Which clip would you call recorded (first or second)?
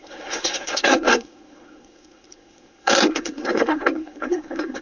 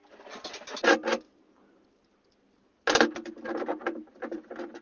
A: second